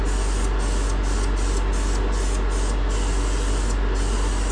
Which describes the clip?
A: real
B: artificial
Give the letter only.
A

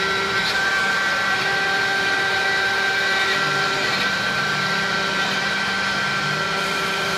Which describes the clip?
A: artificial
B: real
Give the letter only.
A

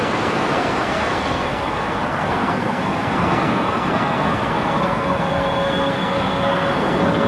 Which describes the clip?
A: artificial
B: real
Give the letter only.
A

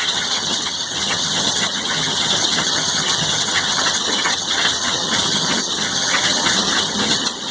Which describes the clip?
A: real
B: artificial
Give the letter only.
B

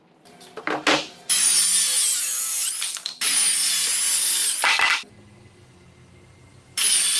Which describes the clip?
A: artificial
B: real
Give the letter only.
B